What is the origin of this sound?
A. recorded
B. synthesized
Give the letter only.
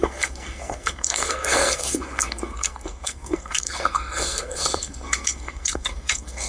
B